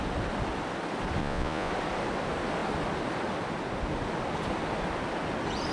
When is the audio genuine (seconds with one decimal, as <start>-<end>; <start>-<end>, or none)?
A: 0.0-1.2; 1.7-5.7